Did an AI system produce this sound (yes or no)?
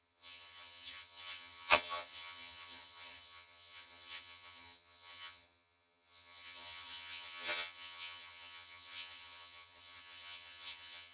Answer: yes